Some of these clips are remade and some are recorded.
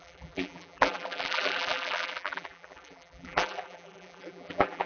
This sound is remade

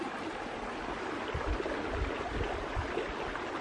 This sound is recorded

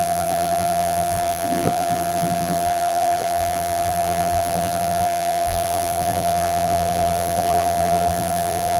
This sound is remade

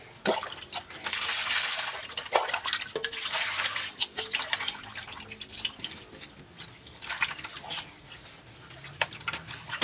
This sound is recorded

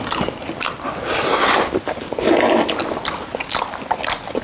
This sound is recorded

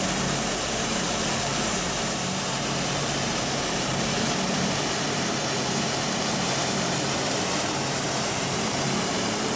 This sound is remade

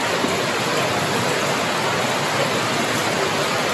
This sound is recorded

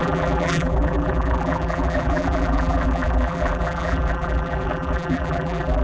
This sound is remade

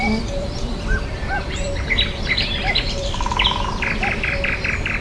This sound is remade